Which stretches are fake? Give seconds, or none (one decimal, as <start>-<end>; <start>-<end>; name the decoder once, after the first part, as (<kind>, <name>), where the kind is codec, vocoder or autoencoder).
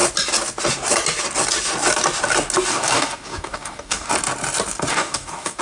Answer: 2.7-4.1 (codec, DAC); 4.9-5.6